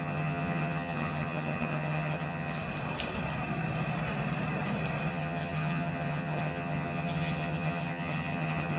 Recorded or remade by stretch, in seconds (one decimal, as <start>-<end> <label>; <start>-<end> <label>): 0.0-2.6 remade; 2.6-5.1 recorded; 5.1-8.8 remade